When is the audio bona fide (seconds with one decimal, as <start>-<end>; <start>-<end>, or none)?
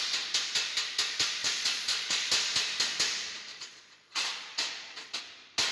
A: 0.0-1.4; 2.3-3.5; 5.2-5.7